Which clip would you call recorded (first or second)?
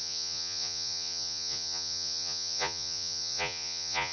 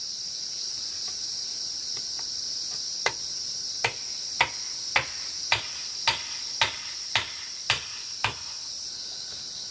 second